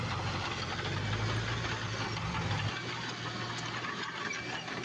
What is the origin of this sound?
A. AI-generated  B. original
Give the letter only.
B